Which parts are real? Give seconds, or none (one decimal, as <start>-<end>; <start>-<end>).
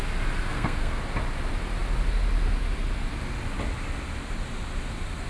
0.0-0.5; 1.0-5.3